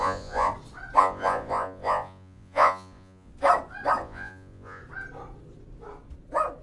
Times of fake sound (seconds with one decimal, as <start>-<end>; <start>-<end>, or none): 0.0-0.5; 1.0-3.3; 4.0-4.8